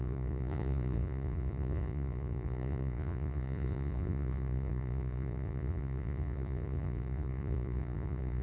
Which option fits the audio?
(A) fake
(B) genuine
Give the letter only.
A